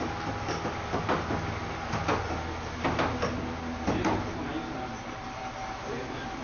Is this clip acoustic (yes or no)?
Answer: yes